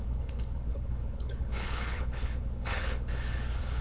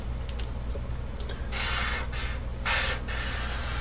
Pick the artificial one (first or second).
first